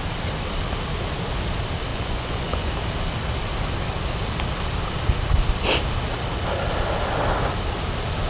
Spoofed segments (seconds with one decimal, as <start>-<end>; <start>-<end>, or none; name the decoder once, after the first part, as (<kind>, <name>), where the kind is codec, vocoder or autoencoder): 1.9-2.7 (vocoder, Vocos)